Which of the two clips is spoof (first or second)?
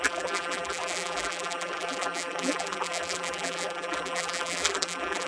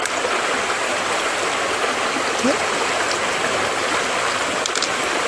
first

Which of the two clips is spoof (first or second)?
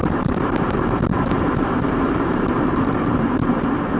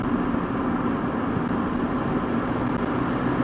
first